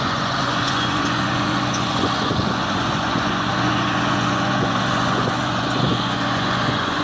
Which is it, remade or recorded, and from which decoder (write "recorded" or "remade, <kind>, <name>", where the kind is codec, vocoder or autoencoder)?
remade, vocoder, Vocos